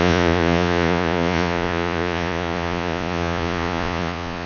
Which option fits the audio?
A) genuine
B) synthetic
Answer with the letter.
B